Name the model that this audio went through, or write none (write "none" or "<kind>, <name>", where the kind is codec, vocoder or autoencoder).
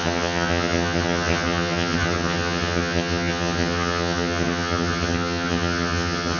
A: vocoder, HiFi-GAN